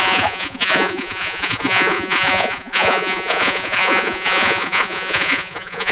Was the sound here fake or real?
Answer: fake